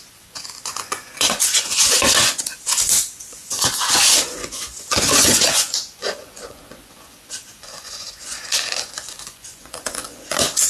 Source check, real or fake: fake